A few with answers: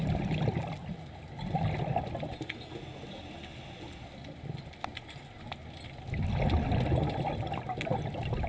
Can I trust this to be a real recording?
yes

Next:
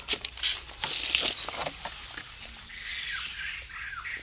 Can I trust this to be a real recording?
yes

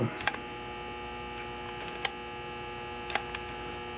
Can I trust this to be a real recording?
yes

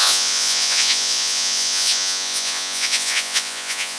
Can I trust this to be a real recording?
no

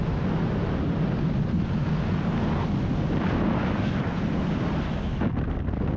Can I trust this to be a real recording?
yes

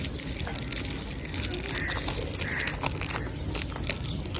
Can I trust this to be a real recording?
yes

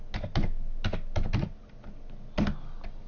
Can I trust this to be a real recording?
yes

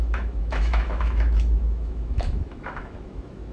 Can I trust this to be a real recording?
no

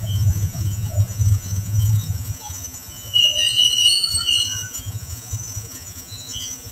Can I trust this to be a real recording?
no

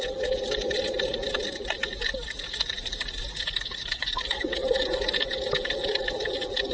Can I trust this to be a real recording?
yes